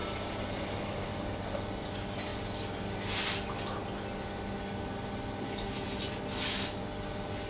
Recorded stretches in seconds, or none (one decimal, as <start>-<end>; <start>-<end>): 0.0-7.5